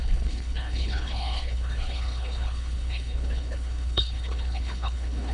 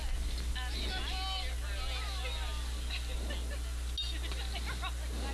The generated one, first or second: first